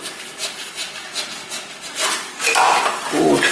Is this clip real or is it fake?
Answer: real